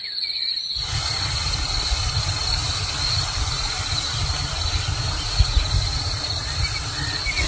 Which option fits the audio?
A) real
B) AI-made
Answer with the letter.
B